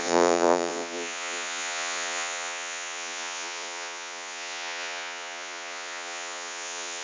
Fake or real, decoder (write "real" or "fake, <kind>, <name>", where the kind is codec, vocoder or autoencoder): fake, vocoder, Vocos